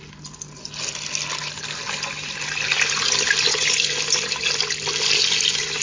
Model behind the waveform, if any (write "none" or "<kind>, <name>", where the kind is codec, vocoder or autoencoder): none